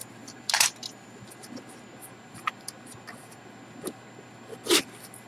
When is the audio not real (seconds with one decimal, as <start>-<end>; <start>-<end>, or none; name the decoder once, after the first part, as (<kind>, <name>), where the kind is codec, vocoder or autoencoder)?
none